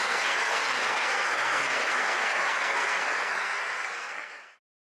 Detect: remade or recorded remade